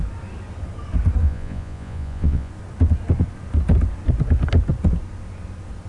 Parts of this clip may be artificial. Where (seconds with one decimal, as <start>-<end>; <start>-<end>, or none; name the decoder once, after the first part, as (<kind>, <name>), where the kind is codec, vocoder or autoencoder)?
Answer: 1.2-2.5 (vocoder, Vocos)